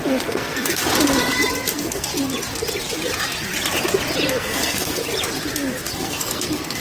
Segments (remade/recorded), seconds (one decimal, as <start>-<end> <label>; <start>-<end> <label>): 0.0-0.8 remade; 0.8-1.7 recorded; 1.7-2.1 remade; 2.1-4.3 recorded; 4.3-5.0 remade; 5.0-5.9 recorded; 5.9-6.8 remade